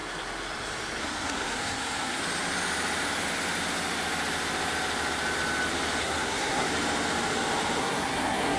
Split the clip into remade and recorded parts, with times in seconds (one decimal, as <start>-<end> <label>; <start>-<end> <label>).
0.0-1.0 recorded; 1.0-2.2 remade; 2.2-6.0 recorded; 6.0-6.7 remade; 6.7-7.8 recorded; 7.8-8.6 remade